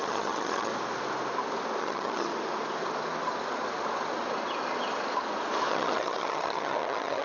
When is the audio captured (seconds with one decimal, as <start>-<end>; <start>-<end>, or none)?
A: 0.7-1.8; 2.3-5.7